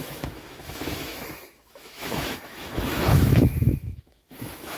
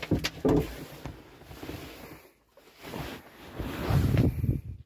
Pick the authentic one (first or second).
second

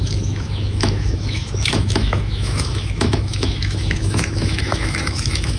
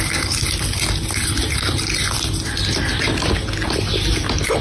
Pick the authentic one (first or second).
second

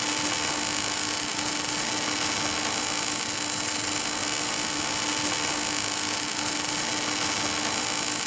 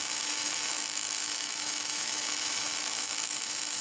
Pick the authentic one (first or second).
first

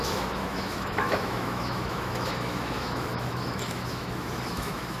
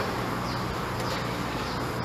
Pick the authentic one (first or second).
second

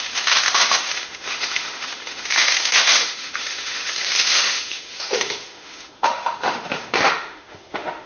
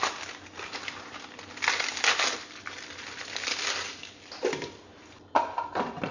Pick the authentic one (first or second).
second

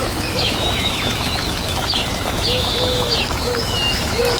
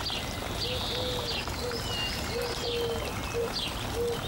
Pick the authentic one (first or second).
second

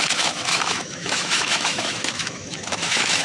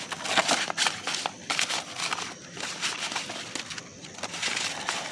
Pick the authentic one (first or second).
second